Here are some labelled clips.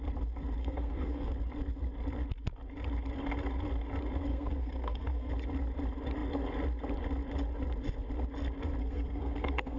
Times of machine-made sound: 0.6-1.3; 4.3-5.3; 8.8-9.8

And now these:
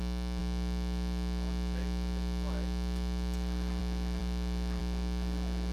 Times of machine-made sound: none

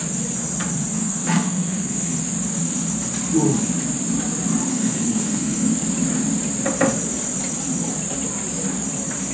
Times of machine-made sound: 1.0-2.2; 4.7-5.7

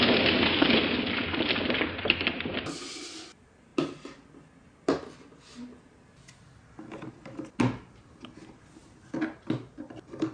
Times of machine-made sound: none